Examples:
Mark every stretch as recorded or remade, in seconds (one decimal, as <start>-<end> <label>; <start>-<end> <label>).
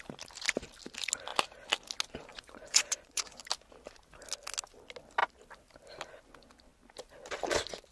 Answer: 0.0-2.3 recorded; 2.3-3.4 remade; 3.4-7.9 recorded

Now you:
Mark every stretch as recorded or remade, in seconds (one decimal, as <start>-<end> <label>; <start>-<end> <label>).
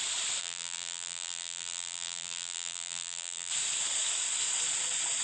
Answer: 0.0-0.4 recorded; 0.4-3.5 remade; 3.5-5.2 recorded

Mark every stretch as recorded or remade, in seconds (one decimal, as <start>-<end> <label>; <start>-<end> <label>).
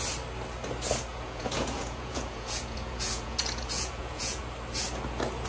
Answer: 0.0-1.1 recorded; 1.1-4.4 remade; 4.4-5.5 recorded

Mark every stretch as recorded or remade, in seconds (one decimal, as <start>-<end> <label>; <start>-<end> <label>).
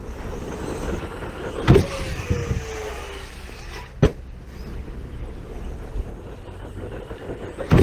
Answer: 0.0-5.7 recorded; 5.7-7.8 remade